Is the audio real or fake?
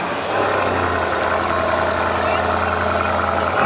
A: real